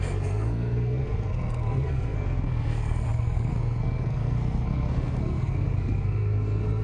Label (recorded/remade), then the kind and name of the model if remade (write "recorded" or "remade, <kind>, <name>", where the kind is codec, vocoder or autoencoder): remade, codec, SNAC